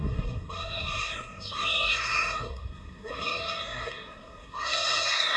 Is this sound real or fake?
fake